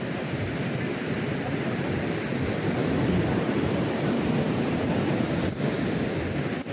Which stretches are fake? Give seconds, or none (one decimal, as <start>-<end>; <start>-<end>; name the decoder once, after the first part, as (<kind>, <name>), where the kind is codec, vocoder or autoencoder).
2.8-5.9 (vocoder, BigVGAN v2)